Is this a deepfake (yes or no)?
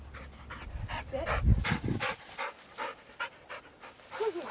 no